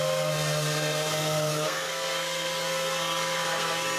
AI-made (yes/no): yes